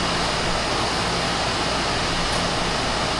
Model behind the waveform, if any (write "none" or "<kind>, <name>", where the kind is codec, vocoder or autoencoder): none